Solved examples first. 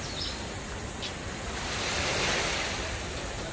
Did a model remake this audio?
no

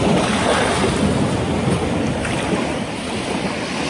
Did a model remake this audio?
no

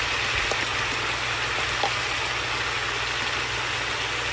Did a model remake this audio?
no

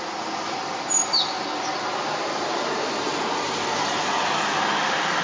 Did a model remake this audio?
no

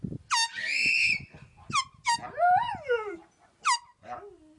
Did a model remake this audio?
no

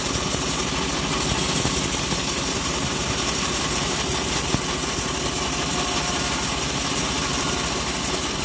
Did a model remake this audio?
no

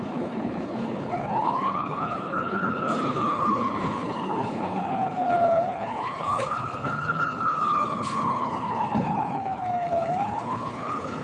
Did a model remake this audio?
yes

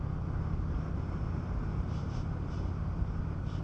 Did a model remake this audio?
no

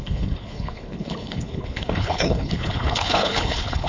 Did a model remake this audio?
yes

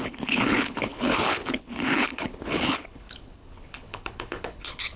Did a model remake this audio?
yes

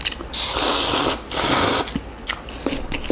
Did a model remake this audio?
no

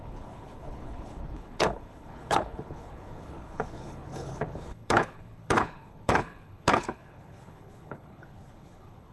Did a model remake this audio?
yes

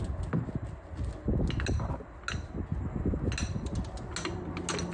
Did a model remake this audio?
no